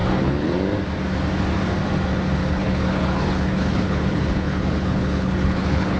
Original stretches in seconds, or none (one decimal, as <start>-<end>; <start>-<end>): 0.5-2.4